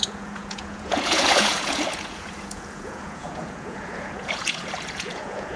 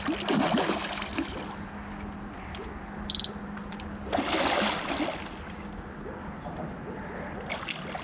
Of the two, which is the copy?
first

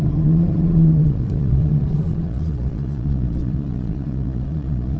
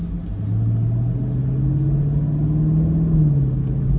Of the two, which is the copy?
first